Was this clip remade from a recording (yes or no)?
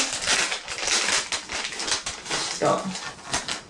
no